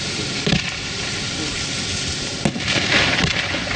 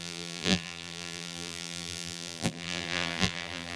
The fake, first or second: second